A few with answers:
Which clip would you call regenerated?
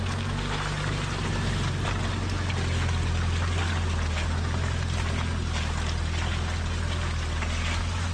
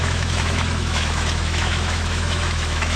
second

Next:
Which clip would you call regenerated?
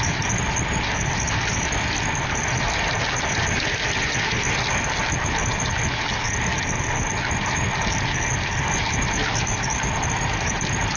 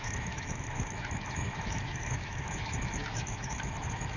second